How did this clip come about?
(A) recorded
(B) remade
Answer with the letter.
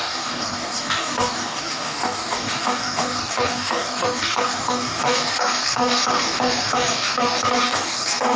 B